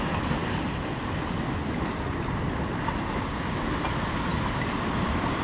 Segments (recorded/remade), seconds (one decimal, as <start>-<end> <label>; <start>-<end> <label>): 0.0-5.4 recorded